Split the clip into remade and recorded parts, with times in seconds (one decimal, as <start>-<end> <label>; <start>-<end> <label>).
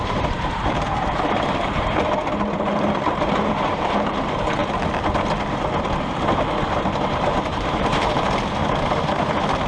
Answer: 0.0-2.2 remade; 2.2-2.9 recorded; 2.9-4.6 remade; 4.6-6.7 recorded; 6.7-8.6 remade; 8.6-9.7 recorded